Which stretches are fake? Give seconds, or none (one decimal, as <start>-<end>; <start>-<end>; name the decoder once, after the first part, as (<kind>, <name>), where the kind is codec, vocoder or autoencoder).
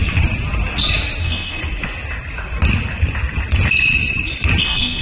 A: 1.2-1.6 (codec, SNAC); 4.6-5.0